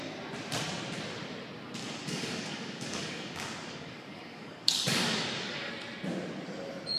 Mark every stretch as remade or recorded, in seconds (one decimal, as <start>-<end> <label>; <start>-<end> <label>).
0.0-1.8 recorded; 1.8-5.7 remade; 5.7-7.0 recorded